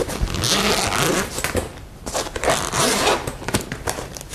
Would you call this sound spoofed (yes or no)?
yes